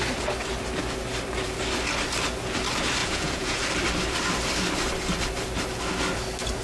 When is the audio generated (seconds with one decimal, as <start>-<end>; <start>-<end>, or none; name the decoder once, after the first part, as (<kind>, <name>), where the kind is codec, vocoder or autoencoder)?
3.0-3.6 (vocoder, Vocos)